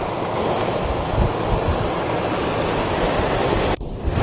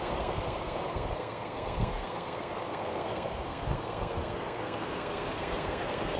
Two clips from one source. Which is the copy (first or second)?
second